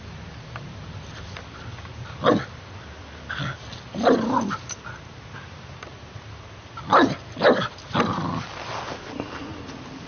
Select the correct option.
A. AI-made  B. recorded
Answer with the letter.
B